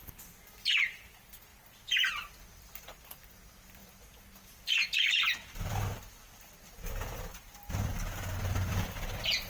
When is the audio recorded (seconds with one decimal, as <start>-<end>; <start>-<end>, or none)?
7.9-8.4